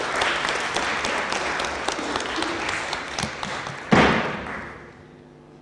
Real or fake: real